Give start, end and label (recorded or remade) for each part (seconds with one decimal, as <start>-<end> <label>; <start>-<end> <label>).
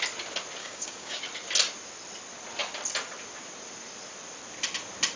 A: 0.0-0.6 recorded; 0.6-1.2 remade; 1.2-5.2 recorded